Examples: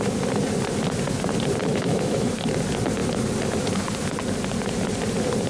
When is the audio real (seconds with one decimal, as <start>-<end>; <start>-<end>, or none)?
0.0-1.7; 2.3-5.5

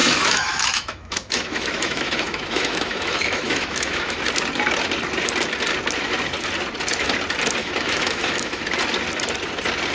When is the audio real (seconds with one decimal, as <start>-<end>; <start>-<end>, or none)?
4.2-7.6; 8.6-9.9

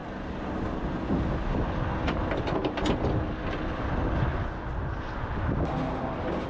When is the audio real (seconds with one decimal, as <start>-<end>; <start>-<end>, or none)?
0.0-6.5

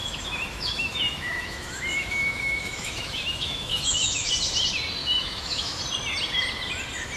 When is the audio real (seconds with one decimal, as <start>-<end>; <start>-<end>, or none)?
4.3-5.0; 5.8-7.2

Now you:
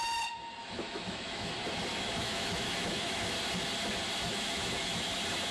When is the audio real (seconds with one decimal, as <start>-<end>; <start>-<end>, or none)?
0.0-0.6; 1.5-1.9; 3.3-4.3; 5.1-5.5

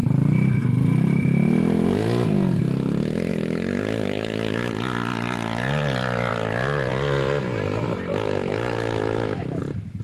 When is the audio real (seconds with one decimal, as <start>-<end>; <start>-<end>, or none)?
0.0-3.3; 4.7-8.1; 9.6-10.0